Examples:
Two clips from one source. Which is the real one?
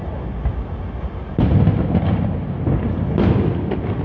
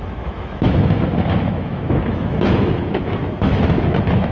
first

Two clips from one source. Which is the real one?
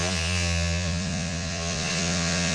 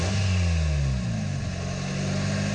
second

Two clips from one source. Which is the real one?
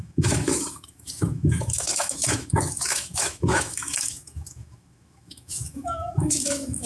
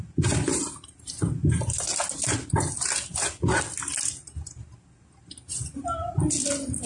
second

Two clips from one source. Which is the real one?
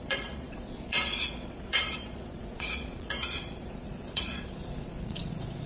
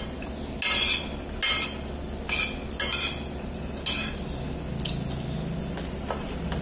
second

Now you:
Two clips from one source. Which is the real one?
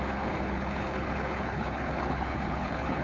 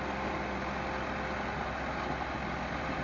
second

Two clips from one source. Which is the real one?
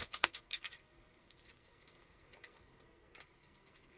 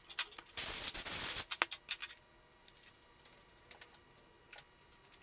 second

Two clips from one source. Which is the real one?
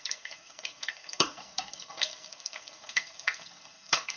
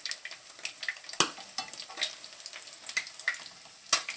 second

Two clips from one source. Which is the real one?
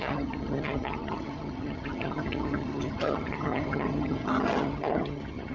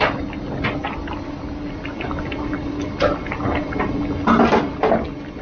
second